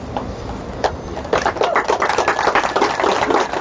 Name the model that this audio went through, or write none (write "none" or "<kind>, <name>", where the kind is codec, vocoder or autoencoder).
none